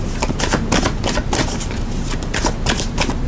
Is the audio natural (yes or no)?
yes